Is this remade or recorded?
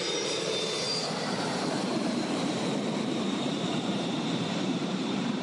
remade